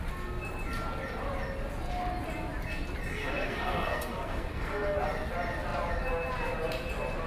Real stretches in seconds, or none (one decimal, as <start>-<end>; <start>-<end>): 0.0-3.1; 5.0-7.3